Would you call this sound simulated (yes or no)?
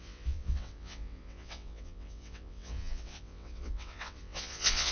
yes